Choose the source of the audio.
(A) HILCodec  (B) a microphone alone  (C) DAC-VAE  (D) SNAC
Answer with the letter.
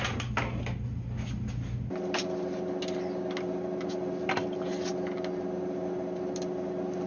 B